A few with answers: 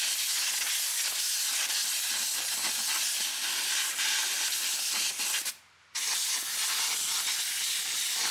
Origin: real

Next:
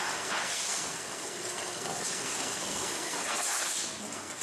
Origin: fake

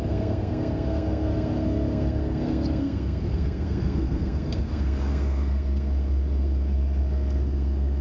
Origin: fake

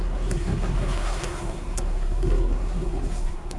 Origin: fake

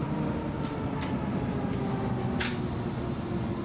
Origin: real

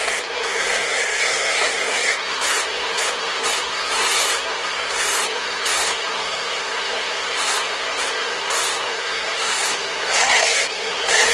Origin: fake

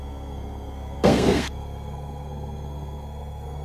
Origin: fake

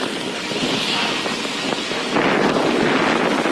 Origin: real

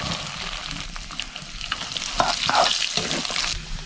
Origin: real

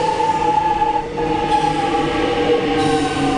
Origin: real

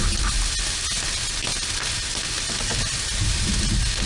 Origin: real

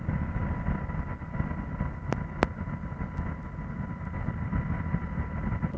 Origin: real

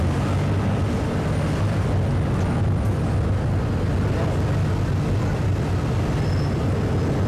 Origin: real